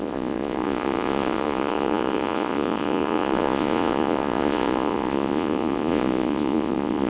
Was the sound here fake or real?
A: fake